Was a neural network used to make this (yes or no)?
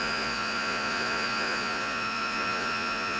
yes